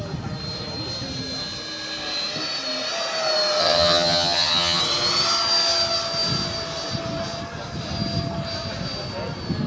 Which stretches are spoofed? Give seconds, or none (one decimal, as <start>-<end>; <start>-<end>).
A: 3.6-4.8